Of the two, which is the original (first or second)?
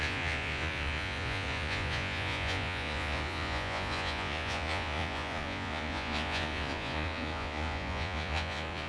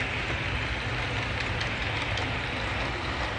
second